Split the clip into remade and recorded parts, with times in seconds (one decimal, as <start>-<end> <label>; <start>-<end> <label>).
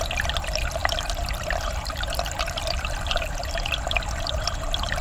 0.0-0.8 recorded; 0.8-3.4 remade; 3.4-5.0 recorded